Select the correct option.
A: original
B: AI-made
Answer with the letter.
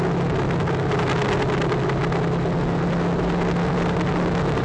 A